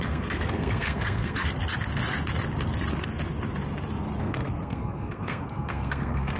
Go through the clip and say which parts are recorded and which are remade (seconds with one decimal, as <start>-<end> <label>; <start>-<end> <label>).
0.0-1.5 remade; 1.5-4.2 recorded; 4.2-6.4 remade